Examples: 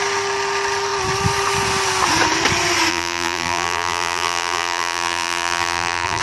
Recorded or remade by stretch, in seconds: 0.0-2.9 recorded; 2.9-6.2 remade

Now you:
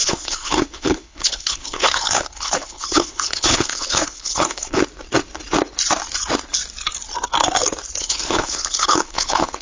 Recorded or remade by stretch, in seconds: 0.0-4.8 remade; 4.8-8.0 recorded; 8.0-9.6 remade